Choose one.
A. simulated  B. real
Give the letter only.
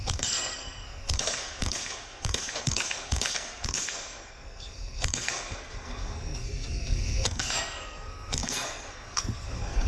A